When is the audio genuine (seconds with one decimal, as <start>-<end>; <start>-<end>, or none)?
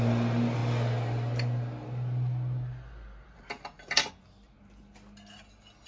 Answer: 0.0-5.9